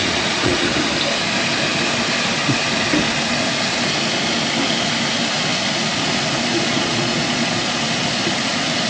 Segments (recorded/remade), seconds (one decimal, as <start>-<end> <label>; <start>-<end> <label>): 0.0-0.7 remade; 0.7-6.5 recorded; 6.5-7.8 remade; 7.8-8.9 recorded